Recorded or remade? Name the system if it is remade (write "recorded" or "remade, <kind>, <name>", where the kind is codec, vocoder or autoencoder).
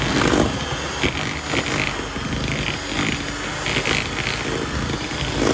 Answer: recorded